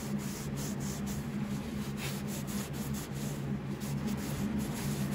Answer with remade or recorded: recorded